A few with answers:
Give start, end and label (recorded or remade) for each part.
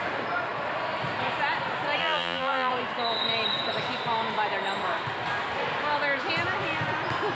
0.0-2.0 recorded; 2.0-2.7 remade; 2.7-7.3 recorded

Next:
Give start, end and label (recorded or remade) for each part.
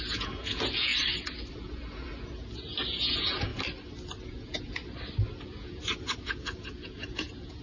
0.0-0.9 remade; 0.9-1.5 recorded; 1.5-3.5 remade; 3.5-4.2 recorded; 4.2-4.8 remade; 4.8-5.4 recorded; 5.4-7.6 remade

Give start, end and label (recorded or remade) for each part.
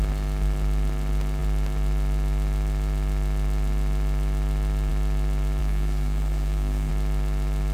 0.0-5.6 recorded; 5.6-6.9 remade; 6.9-7.7 recorded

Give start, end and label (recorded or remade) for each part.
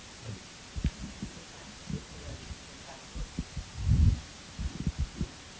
0.0-5.6 recorded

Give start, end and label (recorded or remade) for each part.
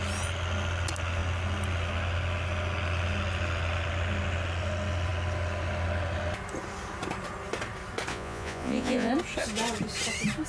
0.0-8.1 recorded; 8.1-9.1 remade; 9.1-10.5 recorded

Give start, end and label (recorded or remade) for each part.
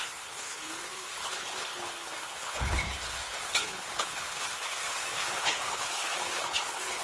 0.0-7.0 remade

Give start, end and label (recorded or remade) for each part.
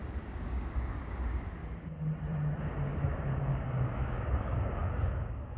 0.0-1.6 remade; 1.6-3.4 recorded; 3.4-5.6 remade